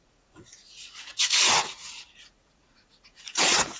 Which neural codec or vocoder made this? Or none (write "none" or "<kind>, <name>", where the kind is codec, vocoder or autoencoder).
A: vocoder, Vocos